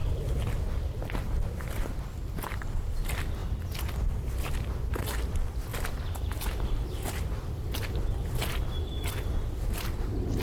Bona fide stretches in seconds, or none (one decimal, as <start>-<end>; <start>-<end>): 0.0-10.4